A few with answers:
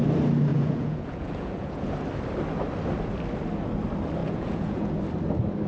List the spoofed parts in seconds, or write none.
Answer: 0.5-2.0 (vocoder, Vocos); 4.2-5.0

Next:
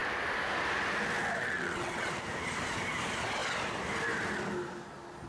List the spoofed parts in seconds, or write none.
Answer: 1.4-2.1 (vocoder, WaveNeXt)

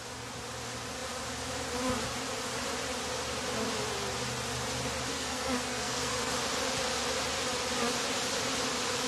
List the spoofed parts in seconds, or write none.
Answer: 5.1-6.3 (codec, SNAC)

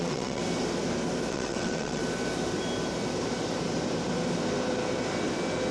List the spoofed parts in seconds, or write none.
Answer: 0.0-0.4 (vocoder, WaveNeXt); 1.3-2.0

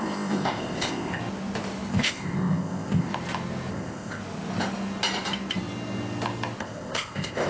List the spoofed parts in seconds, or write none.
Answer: 0.0-1.2 (codec, ZipCodec); 1.9-3.1; 3.7-4.2; 6.6-7.5

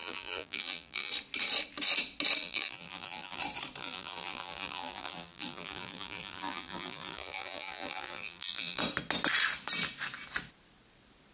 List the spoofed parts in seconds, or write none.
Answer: 0.0-1.1 (vocoder, BigVGAN v2); 2.4-3.4; 3.8-8.8

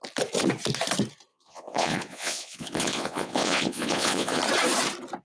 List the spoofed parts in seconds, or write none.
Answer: 1.3-4.4 (vocoder, Vocos)

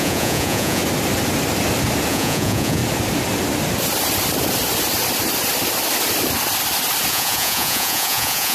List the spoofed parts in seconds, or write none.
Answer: 0.0-0.8 (vocoder, Vocos); 2.1-2.8; 7.1-8.5